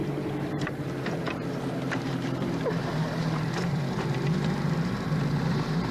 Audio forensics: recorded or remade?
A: remade